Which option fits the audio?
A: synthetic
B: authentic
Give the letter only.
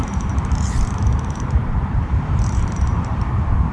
A